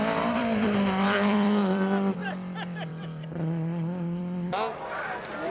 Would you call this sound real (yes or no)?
no